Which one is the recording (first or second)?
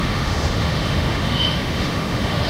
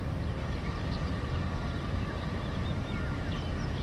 second